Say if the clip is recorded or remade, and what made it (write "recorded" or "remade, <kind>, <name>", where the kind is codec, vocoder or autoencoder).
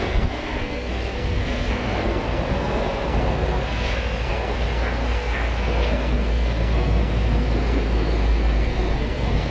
remade, codec, SNAC